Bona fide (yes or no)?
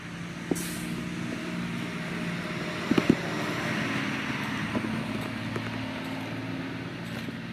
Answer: yes